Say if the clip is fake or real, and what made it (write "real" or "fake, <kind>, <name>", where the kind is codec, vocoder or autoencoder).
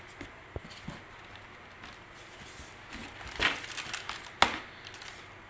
real